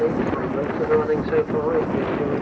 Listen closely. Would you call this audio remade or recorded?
recorded